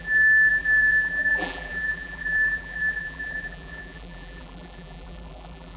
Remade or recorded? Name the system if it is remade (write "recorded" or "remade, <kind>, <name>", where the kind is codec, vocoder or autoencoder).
remade, vocoder, BigVGAN v2